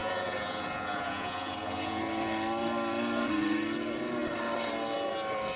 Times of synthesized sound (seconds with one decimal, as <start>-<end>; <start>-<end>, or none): 0.0-2.0